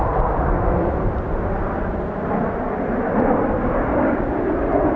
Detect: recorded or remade recorded